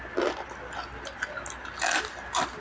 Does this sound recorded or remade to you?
recorded